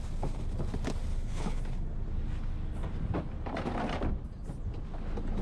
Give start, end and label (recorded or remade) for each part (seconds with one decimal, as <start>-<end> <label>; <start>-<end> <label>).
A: 0.0-1.1 recorded; 1.1-1.6 remade; 1.6-5.4 recorded

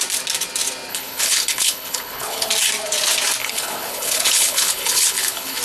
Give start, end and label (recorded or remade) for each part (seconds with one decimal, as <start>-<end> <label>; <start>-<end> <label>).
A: 0.0-0.9 recorded; 0.9-2.5 remade; 2.5-3.4 recorded; 3.4-5.6 remade

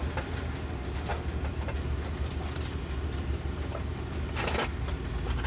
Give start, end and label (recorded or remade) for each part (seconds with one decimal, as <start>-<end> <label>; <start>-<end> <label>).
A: 0.0-5.5 recorded